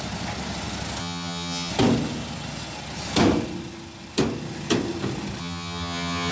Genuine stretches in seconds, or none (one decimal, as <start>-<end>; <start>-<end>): 0.0-1.0; 1.7-5.4